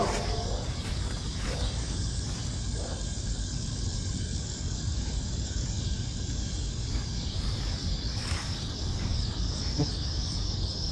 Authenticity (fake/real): fake